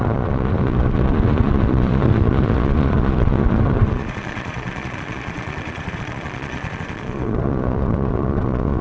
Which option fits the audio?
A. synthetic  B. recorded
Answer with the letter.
A